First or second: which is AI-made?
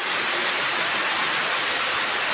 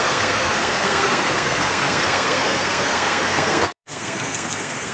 second